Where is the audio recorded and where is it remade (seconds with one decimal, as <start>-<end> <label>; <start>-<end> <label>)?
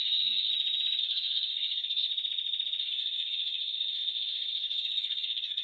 0.0-0.5 remade; 0.5-1.0 recorded; 1.0-2.1 remade; 2.1-2.8 recorded; 2.8-5.6 remade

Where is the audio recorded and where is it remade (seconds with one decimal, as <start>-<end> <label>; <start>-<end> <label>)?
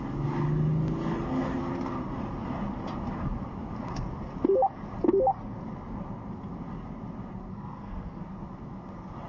0.0-7.5 recorded; 7.5-8.2 remade; 8.2-9.3 recorded